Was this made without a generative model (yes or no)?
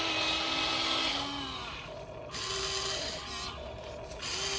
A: yes